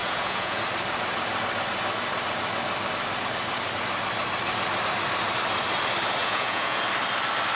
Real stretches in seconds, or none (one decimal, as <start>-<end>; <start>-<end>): 0.6-6.2; 6.8-7.6